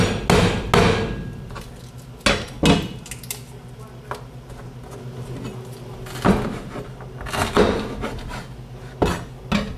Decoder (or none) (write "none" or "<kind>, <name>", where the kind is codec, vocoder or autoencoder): none